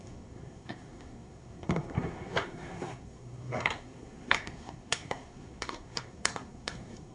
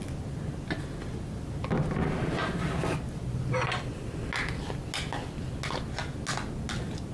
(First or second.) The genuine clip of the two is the second